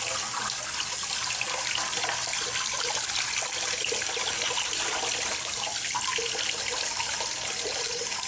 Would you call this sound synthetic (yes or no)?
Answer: no